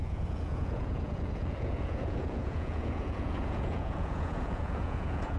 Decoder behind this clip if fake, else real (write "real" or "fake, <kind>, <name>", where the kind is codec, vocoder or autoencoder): fake, vocoder, Vocos